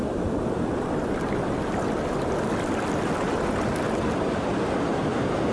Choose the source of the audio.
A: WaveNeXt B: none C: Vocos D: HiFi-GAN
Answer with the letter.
B